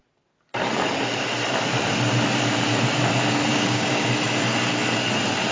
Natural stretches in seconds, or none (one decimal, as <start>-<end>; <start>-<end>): 0.0-3.5; 4.1-5.5